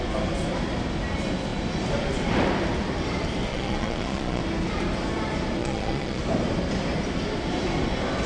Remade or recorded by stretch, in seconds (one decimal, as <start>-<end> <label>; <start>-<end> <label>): 0.0-3.5 recorded; 3.5-4.4 remade; 4.4-5.6 recorded; 5.6-6.2 remade; 6.2-8.3 recorded